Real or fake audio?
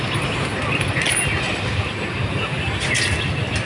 real